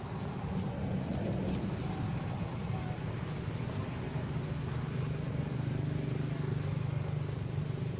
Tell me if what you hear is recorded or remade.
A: recorded